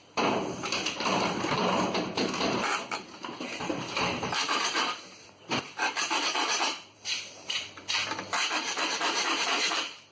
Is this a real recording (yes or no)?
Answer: no